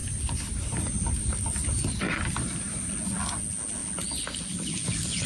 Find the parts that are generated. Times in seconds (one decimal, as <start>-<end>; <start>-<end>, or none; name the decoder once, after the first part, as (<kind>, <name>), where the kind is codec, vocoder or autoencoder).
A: 0.0-2.9 (vocoder, BigVGAN v2)